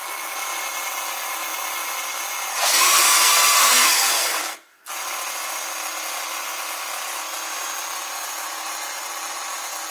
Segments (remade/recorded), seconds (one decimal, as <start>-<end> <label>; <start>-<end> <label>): 0.0-2.5 recorded; 2.5-4.9 remade; 4.9-9.9 recorded